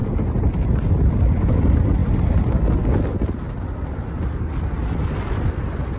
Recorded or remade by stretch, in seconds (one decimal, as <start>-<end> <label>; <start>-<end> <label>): 0.0-6.0 recorded